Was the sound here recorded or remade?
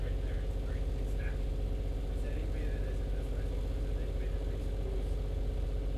recorded